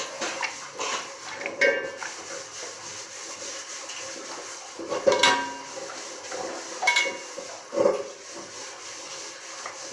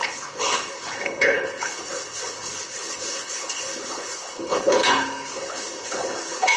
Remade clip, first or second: second